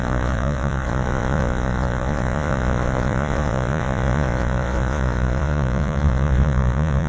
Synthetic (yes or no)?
yes